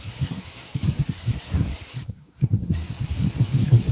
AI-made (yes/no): yes